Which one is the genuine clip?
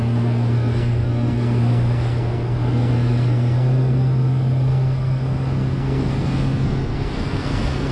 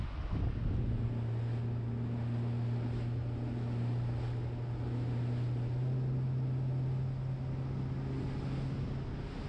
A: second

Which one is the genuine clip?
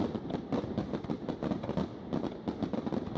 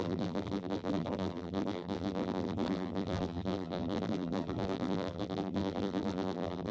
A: first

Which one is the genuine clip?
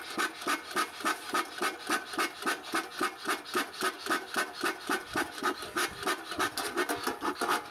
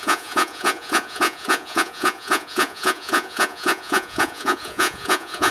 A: first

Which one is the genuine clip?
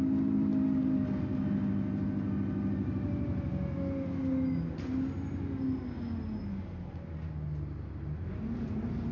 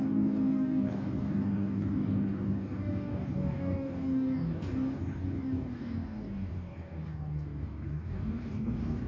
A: first